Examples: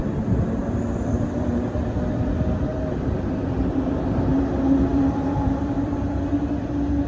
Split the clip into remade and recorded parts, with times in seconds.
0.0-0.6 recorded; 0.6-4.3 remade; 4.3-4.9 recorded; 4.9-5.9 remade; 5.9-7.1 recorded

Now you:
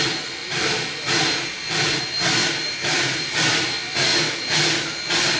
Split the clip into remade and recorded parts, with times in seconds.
0.0-2.4 recorded; 2.4-3.2 remade; 3.2-5.4 recorded

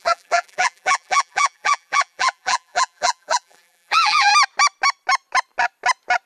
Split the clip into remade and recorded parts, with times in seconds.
0.0-4.3 remade; 4.3-6.3 recorded

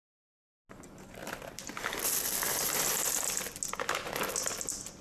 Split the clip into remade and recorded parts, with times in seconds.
0.0-1.2 recorded; 1.2-2.8 remade; 2.8-5.0 recorded

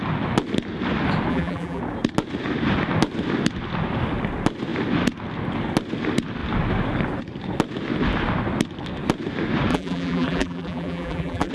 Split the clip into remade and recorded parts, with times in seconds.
0.0-1.3 recorded; 1.3-1.8 remade; 1.8-9.7 recorded; 9.7-11.5 remade

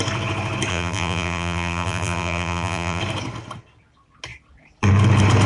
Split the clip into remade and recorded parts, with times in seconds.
0.0-0.7 recorded; 0.7-3.0 remade; 3.0-5.5 recorded

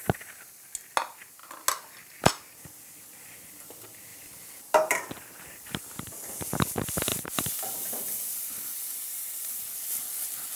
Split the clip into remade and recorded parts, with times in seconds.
0.0-4.1 recorded; 4.1-6.0 remade; 6.0-7.1 recorded; 7.1-9.6 remade; 9.6-10.6 recorded